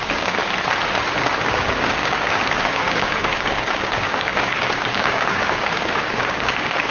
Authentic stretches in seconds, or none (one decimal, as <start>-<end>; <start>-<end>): 0.4-1.5